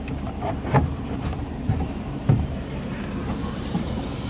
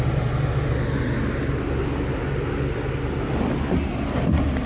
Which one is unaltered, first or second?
second